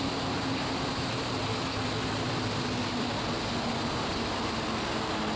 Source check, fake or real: real